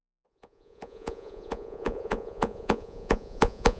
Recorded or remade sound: remade